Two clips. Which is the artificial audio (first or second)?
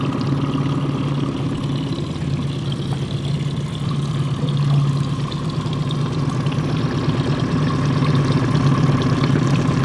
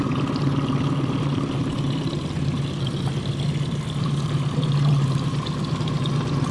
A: second